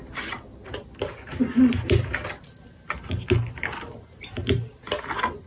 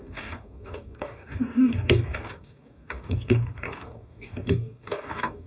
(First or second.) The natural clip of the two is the first